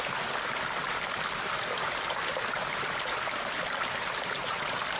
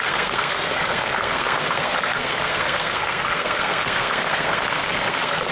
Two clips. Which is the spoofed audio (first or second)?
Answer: second